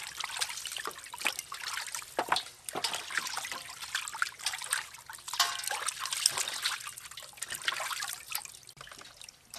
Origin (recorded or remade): recorded